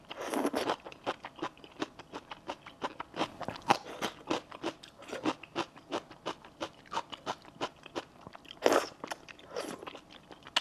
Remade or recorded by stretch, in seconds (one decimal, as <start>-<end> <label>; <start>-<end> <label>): 0.0-10.6 recorded